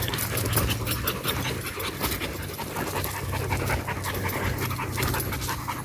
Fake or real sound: real